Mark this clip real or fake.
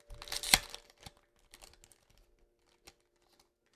real